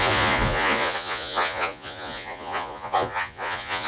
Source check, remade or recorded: remade